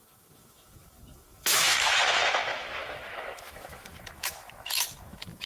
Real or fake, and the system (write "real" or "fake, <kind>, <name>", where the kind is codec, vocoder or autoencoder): fake, autoencoder, DAC-VAE